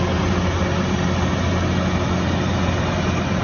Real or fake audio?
real